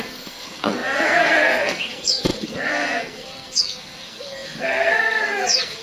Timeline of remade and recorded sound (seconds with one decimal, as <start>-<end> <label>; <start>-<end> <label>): 0.0-5.8 remade